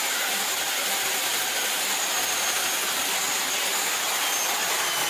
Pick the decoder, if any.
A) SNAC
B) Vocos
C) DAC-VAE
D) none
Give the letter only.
D